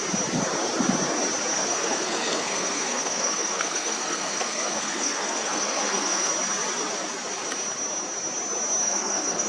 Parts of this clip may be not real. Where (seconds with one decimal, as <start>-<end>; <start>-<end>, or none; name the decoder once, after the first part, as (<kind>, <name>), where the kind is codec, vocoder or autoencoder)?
1.5-6.3 (codec, SNAC); 8.8-9.5